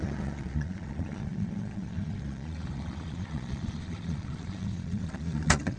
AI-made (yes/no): yes